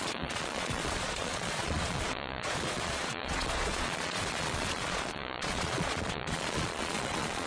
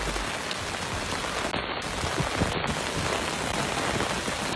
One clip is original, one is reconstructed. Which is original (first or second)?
second